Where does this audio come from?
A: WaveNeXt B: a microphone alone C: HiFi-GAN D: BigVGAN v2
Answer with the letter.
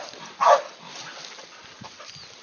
B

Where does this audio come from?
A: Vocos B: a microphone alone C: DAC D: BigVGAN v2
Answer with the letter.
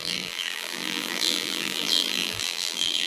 D